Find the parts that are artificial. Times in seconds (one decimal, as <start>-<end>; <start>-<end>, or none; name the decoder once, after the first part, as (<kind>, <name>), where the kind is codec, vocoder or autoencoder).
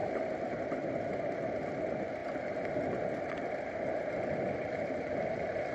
none